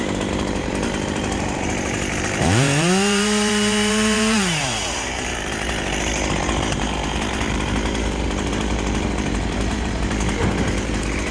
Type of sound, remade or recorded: remade